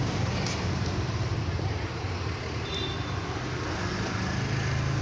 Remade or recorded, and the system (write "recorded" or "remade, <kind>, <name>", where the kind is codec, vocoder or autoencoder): recorded